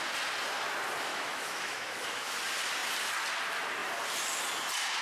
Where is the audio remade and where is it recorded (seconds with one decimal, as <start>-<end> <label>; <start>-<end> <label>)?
0.0-1.1 recorded; 1.1-2.3 remade; 2.3-5.0 recorded